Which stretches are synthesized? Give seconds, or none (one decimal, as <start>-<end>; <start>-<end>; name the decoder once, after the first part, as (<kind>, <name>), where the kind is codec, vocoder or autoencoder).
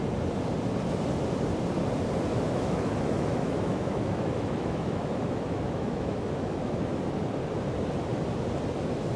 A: 2.3-7.0 (autoencoder, DAC-VAE)